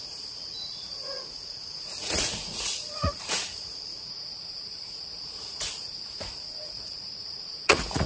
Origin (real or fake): fake